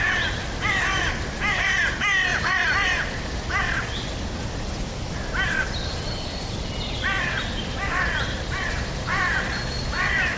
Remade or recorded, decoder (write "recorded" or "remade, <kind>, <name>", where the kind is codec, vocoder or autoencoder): recorded